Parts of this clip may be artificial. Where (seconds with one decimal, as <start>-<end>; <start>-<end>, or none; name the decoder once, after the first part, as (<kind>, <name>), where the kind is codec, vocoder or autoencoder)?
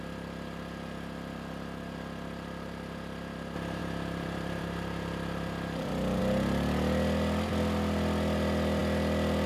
3.8-6.2 (vocoder, BigVGAN v2)